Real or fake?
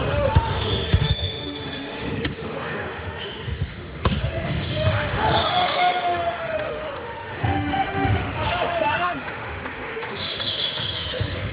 fake